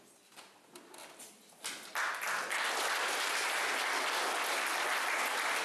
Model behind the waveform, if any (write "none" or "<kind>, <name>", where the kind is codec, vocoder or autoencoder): none